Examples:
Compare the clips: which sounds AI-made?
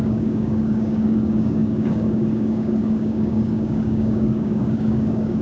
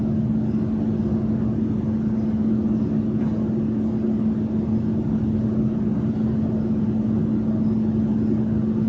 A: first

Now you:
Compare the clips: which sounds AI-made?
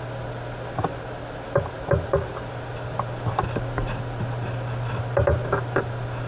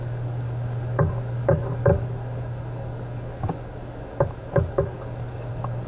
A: second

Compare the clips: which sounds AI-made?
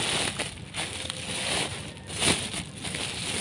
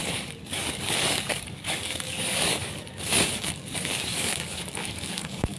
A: second